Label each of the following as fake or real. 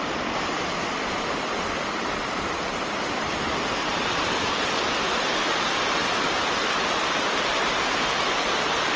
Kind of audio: real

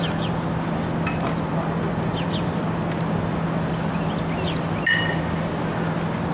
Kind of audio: real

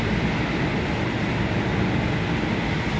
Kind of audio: real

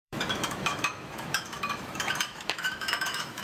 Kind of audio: fake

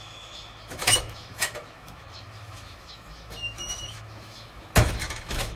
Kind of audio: fake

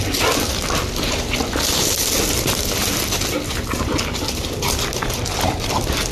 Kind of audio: real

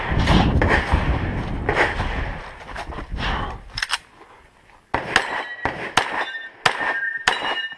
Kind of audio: real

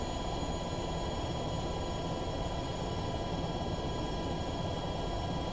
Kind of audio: real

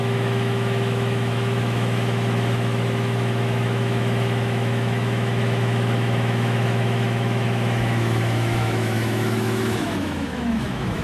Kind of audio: fake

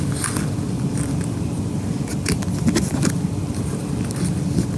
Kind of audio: real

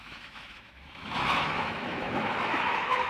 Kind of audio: fake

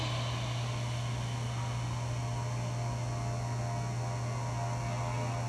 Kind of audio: real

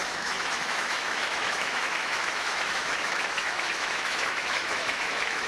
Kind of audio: fake